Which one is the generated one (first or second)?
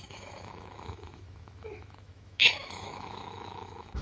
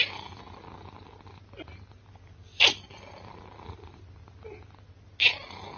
first